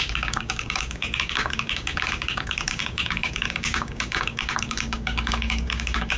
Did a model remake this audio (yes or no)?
yes